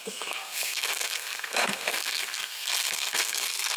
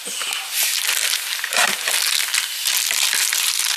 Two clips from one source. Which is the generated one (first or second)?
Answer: first